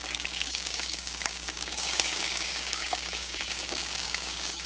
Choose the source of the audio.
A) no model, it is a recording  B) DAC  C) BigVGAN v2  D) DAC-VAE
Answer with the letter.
B